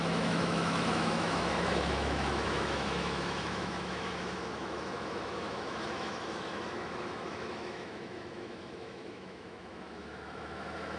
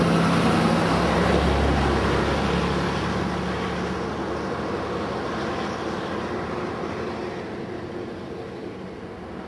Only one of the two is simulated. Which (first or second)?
first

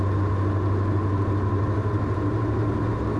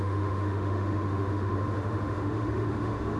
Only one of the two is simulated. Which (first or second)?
second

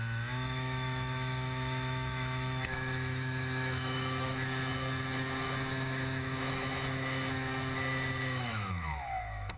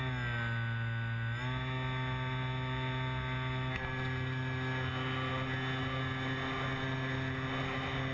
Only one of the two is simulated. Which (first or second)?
first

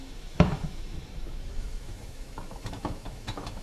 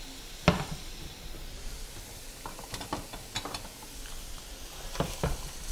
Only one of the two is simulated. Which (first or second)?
first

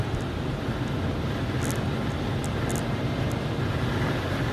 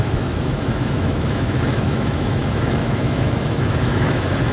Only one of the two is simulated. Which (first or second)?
second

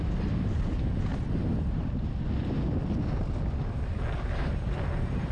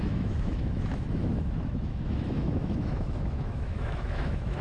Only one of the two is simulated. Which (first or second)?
second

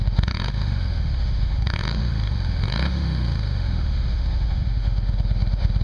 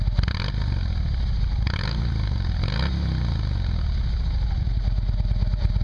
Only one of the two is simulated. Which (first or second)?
first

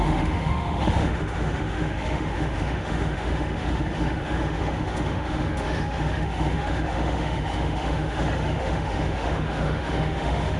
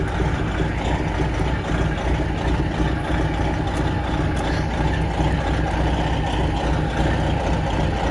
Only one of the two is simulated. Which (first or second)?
first